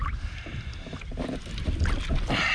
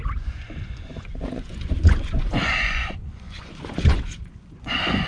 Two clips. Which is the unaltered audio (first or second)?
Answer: first